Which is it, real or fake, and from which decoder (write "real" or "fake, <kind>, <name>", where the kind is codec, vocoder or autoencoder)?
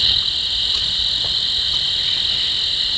real